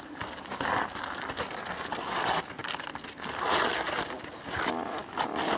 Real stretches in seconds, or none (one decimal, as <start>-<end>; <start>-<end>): 0.0-5.6